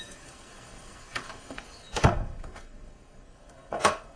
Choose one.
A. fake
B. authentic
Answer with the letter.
A